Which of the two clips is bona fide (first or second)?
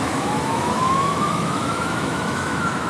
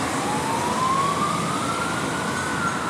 second